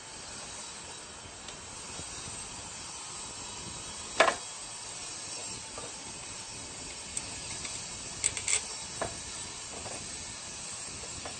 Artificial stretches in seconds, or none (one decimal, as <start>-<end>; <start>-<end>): none